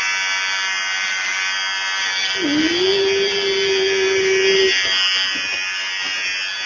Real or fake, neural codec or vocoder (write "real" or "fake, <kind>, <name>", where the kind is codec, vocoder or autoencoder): real